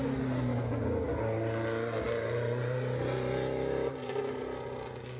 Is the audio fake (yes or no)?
no